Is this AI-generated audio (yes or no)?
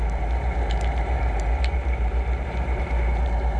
yes